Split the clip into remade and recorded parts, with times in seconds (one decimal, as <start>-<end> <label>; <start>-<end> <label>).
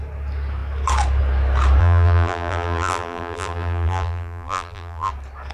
0.0-1.8 recorded; 1.8-5.1 remade; 5.1-5.5 recorded